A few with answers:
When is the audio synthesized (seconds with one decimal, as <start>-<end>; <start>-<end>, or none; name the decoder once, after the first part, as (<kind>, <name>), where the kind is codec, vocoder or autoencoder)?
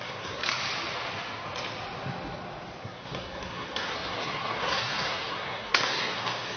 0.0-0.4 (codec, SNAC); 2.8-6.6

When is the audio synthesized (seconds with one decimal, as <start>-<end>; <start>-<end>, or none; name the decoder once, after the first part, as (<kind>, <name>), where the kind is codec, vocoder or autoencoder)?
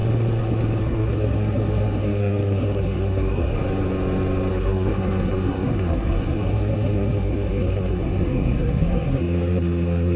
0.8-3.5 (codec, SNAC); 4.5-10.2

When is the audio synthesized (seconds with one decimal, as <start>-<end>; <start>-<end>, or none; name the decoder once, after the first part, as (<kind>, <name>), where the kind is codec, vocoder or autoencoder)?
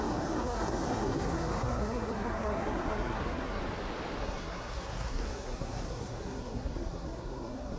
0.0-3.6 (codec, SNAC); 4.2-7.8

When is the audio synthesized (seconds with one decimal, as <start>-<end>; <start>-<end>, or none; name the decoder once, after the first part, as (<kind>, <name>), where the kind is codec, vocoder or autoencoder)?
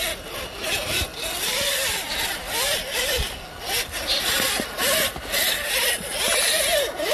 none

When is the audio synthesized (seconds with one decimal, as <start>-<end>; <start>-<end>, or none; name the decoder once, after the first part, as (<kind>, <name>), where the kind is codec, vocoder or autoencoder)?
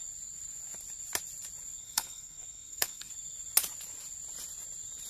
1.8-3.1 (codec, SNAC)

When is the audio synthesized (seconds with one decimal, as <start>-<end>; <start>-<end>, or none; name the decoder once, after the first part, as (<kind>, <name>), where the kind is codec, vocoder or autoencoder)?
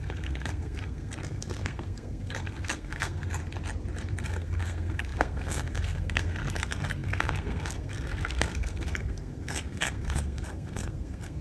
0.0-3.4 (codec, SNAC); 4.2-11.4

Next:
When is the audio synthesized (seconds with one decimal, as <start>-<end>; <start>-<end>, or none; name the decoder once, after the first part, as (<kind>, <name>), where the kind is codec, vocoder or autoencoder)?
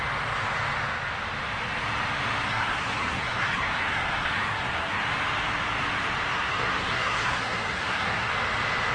2.5-5.0 (codec, SNAC); 6.3-8.3